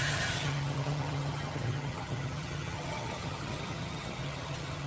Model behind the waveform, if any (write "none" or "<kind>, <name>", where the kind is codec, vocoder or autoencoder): vocoder, HiFi-GAN